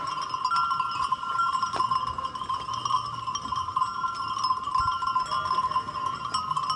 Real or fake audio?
real